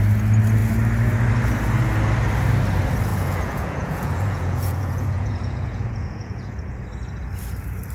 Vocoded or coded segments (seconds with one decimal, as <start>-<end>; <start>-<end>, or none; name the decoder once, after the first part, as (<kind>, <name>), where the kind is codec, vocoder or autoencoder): 3.1-6.7 (vocoder, Vocos)